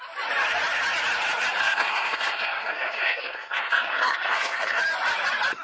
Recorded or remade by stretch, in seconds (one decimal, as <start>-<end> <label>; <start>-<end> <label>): 0.0-1.6 recorded; 1.6-4.8 remade; 4.8-5.6 recorded